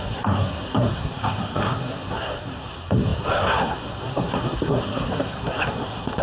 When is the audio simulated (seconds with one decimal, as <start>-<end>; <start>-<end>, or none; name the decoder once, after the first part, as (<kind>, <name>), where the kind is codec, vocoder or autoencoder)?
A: 0.0-6.2 (codec, SNAC)